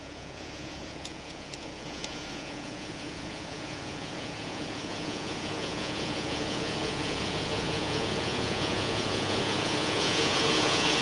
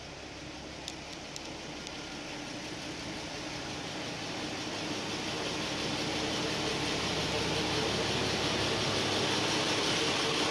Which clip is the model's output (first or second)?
first